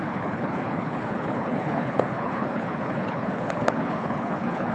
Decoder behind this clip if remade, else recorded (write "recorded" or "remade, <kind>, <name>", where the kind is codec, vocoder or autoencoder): remade, codec, HILCodec